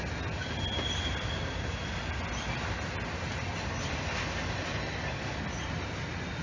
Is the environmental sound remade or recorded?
recorded